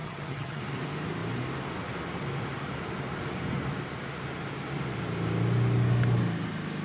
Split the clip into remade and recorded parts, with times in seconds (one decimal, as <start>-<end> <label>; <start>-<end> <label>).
0.0-0.6 remade; 0.6-6.8 recorded